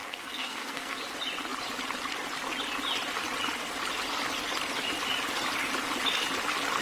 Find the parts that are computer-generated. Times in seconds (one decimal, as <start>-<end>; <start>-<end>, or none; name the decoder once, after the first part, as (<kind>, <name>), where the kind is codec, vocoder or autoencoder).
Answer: 0.0-1.0 (codec, SNAC)

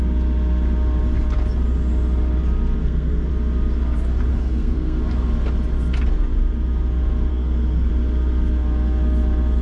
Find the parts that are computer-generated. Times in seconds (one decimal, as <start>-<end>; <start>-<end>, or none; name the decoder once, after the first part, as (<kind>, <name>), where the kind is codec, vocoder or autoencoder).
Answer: 2.8-3.3 (codec, SNAC); 4.3-5.0; 7.3-7.9

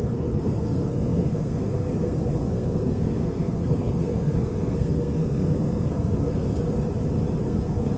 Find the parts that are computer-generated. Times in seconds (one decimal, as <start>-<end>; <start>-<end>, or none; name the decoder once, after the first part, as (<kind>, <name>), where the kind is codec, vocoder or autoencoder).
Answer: 0.0-6.5 (codec, SNAC); 7.4-8.0

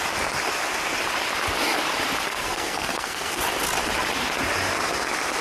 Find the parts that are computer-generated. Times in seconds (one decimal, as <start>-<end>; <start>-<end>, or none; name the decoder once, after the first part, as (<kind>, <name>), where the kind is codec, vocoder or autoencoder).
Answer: 2.3-3.4 (codec, SNAC)

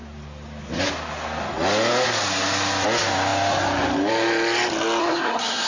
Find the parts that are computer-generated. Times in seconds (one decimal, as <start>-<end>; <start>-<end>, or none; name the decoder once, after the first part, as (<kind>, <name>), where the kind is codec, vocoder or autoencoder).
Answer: 5.0-5.7 (codec, SNAC)

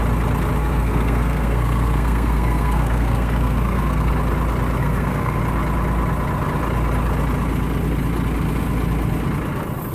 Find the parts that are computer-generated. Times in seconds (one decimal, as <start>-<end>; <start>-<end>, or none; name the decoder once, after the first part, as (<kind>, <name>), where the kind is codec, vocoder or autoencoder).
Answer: 0.6-4.1 (codec, SNAC); 4.8-5.4